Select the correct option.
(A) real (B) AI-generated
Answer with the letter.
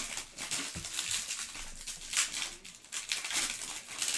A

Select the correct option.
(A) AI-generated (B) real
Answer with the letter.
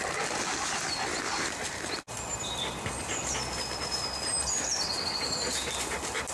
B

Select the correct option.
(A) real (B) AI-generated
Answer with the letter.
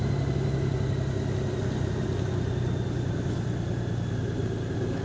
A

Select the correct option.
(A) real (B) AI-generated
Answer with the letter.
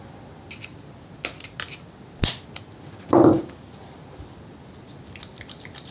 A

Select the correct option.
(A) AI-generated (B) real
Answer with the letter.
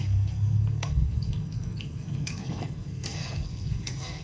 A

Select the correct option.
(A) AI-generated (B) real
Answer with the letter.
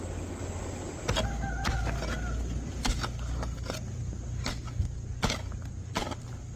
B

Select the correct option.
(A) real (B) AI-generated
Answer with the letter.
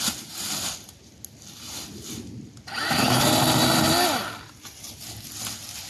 A